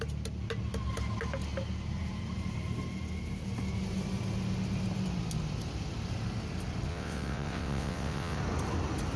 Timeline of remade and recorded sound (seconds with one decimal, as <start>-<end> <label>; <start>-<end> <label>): 0.0-6.9 recorded; 6.9-8.4 remade; 8.4-9.2 recorded